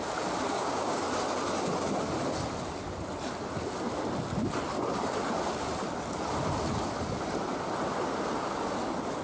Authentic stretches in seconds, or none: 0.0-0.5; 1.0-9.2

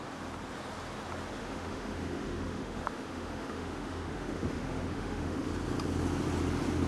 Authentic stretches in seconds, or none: 0.0-1.4; 5.5-6.9

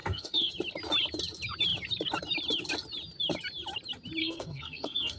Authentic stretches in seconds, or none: 0.5-4.2